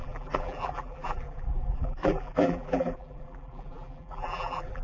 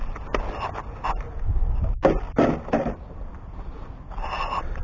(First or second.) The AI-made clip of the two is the first